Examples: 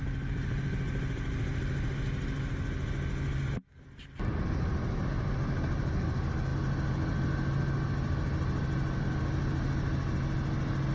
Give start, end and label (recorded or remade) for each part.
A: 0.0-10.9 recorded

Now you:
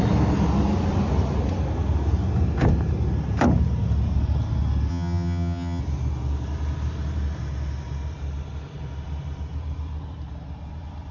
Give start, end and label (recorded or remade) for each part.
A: 0.0-4.9 recorded; 4.9-5.8 remade; 5.8-11.1 recorded

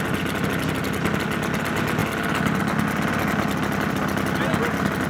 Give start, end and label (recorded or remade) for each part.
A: 0.0-5.1 recorded

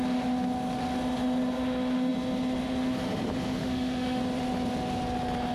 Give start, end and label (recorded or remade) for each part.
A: 0.0-3.6 recorded; 3.6-4.2 remade; 4.2-5.5 recorded

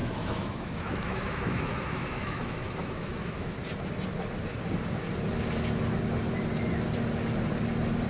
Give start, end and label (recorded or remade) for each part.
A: 0.0-3.5 remade; 3.5-8.1 recorded